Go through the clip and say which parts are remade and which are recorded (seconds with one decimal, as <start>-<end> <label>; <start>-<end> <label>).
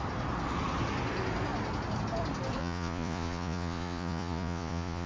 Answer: 0.0-2.6 recorded; 2.6-5.1 remade